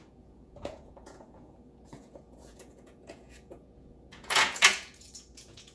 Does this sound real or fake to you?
fake